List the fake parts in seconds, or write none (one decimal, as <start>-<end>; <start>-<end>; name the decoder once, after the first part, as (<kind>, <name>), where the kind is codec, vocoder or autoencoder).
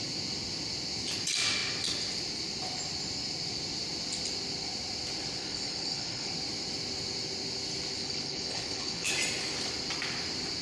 5.4-6.3 (codec, HILCodec); 8.0-9.1